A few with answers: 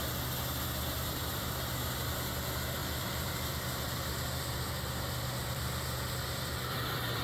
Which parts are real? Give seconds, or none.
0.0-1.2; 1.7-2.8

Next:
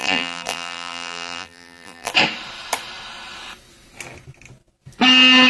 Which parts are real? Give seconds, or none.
2.1-5.5